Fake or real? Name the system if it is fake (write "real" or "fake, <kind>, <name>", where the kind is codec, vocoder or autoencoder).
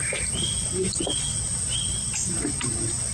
real